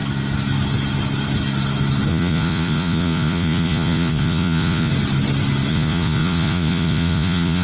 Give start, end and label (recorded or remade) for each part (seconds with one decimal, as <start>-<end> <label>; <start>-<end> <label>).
0.0-2.1 recorded; 2.1-4.9 remade; 4.9-5.7 recorded; 5.7-7.6 remade